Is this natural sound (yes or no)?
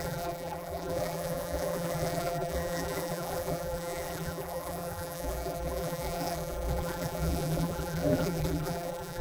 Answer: no